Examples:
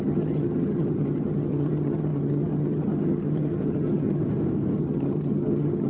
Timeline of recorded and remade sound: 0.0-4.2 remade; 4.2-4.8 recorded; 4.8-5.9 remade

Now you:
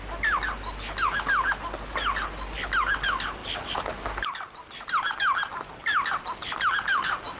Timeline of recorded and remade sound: 0.0-7.4 recorded

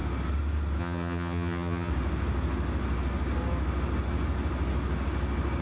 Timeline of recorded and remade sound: 0.0-0.8 recorded; 0.8-1.9 remade; 1.9-5.6 recorded